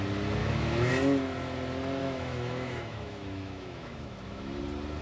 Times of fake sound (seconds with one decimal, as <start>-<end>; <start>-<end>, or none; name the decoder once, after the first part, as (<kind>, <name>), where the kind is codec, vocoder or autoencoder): 0.4-0.9 (autoencoder, DAC-VAE); 2.0-4.6